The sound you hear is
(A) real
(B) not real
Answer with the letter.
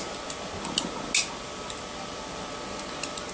A